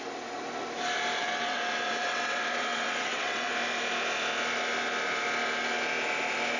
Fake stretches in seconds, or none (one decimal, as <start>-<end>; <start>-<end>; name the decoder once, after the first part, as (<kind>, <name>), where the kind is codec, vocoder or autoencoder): 1.2-3.5 (vocoder, WaveNeXt)